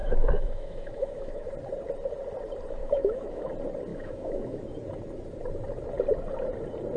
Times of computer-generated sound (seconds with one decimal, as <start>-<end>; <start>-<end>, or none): 0.0-1.5; 2.8-3.5; 3.9-4.6